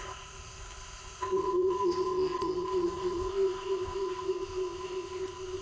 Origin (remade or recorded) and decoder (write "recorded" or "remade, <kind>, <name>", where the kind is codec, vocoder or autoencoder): remade, codec, ZipCodec